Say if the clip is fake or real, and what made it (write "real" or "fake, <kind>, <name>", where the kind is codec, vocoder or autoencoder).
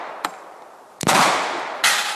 fake, vocoder, BigVGAN v2